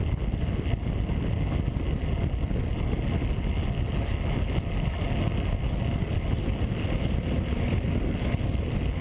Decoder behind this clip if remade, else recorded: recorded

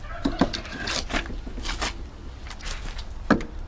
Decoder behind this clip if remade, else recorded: recorded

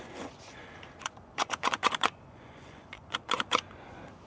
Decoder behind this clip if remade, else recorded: remade, vocoder, Vocos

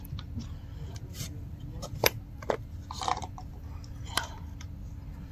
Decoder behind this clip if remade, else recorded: remade, vocoder, BigVGAN v2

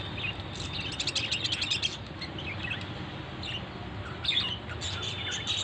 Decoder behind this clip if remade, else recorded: recorded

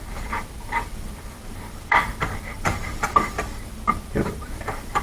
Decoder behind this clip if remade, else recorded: remade, vocoder, BigVGAN v2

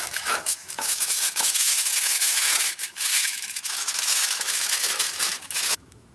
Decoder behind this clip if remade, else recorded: remade, autoencoder, DAC-VAE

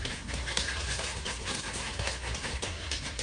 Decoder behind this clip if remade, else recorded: remade, codec, SNAC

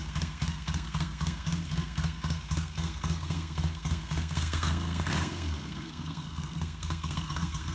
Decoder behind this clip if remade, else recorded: remade, codec, SNAC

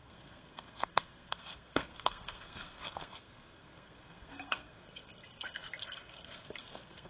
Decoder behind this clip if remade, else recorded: remade, codec, SNAC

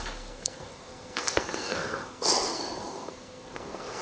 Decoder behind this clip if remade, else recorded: remade, codec, SNAC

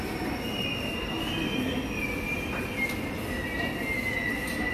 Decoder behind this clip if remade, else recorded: recorded